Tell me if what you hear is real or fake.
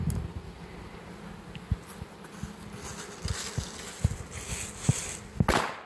real